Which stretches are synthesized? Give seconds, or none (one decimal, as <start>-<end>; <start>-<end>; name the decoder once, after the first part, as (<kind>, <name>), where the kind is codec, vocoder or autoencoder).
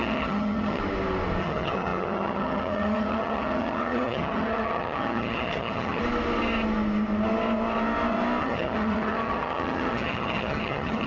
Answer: 0.0-0.8 (vocoder, HiFi-GAN); 1.4-6.0; 8.4-11.1